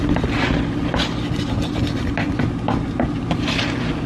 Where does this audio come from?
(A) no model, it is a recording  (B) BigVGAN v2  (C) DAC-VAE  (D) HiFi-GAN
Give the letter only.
A